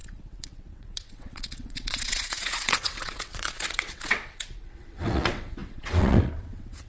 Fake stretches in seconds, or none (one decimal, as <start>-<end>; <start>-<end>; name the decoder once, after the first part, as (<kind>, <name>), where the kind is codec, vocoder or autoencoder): 0.0-6.9 (vocoder, WaveNeXt)